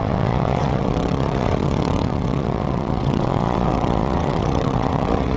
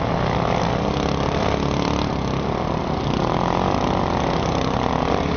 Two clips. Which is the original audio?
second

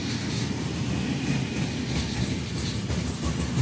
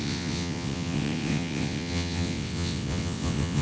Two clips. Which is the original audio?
first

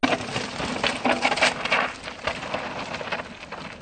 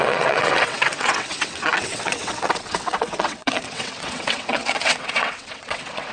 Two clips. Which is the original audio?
first